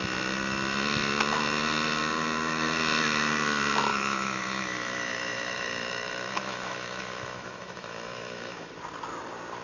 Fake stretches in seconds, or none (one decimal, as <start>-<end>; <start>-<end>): 3.9-8.7